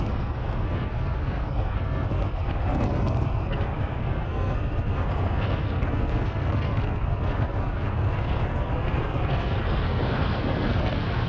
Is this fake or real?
fake